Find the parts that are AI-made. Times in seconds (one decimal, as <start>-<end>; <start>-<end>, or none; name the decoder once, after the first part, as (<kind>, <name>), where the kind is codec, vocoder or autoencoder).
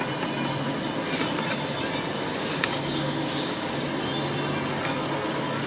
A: 2.3-3.9 (codec, DAC)